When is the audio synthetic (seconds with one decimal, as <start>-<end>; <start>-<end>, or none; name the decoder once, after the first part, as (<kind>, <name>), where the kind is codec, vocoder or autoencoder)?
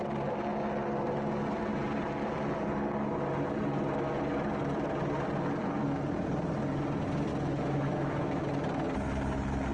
7.3-8.4 (autoencoder, DAC-VAE)